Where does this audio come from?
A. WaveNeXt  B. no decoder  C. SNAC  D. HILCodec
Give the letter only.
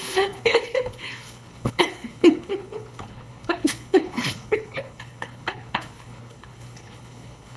D